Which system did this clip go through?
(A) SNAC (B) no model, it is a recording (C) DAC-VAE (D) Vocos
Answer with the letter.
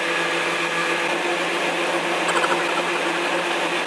B